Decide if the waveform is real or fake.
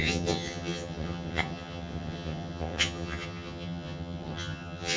fake